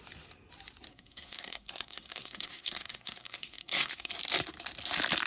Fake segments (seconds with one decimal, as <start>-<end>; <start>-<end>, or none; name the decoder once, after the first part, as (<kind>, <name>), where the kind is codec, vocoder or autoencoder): 0.9-4.1 (codec, SNAC)